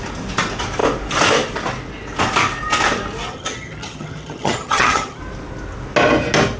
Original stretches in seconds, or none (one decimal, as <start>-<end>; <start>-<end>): 0.0-3.3; 5.2-6.6